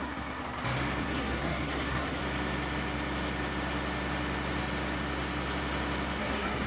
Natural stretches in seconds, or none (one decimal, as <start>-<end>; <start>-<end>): 0.4-1.0; 2.2-6.2